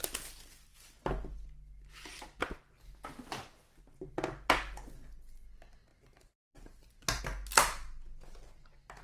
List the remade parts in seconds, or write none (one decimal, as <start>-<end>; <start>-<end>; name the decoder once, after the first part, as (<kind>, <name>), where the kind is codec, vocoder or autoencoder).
5.9-7.2 (vocoder, BigVGAN v2)